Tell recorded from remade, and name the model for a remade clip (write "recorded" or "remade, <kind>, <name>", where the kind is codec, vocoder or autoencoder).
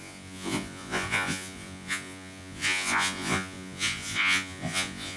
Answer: remade, vocoder, Vocos